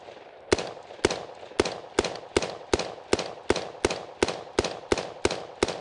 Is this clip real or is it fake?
real